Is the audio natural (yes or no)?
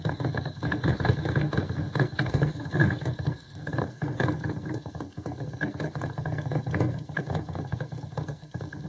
no